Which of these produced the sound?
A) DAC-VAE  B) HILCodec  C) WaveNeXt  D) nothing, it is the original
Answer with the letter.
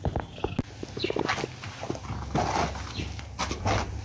D